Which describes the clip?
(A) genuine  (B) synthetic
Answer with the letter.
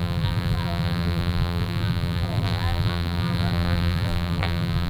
B